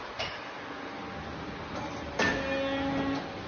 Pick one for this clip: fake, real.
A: real